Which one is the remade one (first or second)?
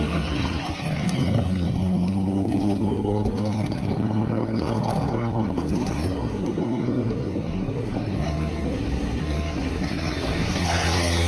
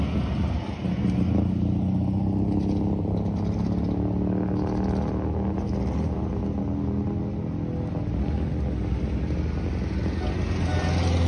first